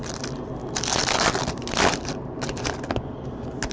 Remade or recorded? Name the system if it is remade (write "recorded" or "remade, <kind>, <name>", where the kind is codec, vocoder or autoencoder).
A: recorded